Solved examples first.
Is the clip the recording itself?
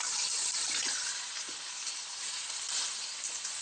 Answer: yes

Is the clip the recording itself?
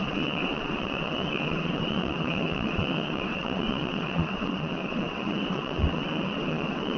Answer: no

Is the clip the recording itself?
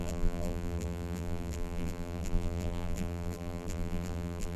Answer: no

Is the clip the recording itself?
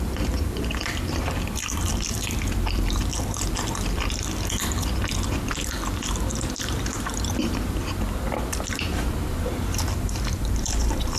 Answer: no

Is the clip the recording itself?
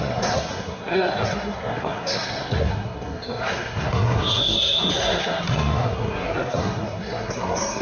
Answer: no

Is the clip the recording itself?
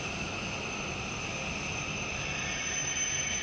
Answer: yes